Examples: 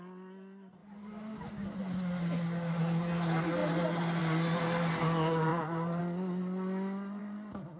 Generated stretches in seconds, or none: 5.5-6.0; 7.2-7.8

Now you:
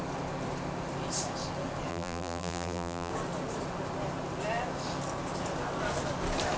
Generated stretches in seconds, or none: 1.9-3.1

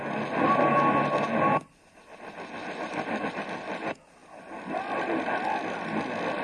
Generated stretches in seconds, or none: none